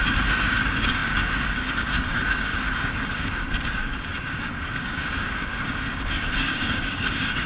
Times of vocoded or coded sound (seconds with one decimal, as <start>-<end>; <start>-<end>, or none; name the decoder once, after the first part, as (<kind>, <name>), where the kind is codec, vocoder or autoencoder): 0.0-7.5 (codec, DAC)